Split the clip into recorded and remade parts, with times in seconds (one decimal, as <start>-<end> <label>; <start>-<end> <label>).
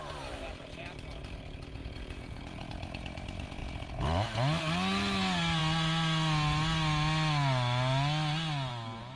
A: 0.0-1.8 recorded; 1.8-2.7 remade; 2.7-9.2 recorded